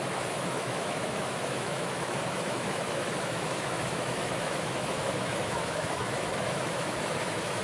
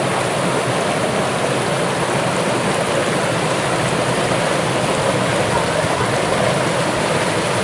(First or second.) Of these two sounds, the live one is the second